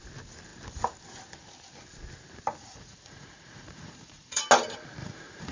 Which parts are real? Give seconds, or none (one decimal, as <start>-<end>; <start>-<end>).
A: 0.0-2.6; 4.4-5.0